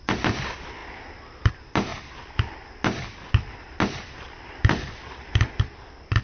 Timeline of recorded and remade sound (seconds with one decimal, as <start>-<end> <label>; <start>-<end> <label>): 0.0-6.2 recorded